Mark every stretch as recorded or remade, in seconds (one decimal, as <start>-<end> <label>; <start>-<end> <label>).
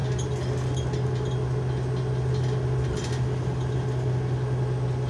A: 0.0-5.1 recorded